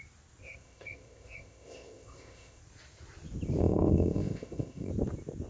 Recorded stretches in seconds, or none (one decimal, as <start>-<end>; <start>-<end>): 0.0-0.4; 2.6-3.6; 4.9-5.5